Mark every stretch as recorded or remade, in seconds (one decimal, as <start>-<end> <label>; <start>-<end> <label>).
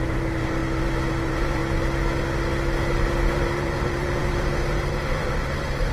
0.0-0.6 remade; 0.6-1.1 recorded; 1.1-1.6 remade; 1.6-3.3 recorded; 3.3-5.9 remade